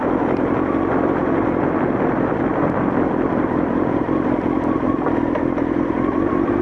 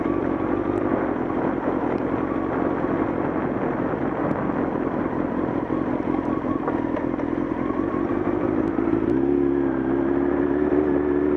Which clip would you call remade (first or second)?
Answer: first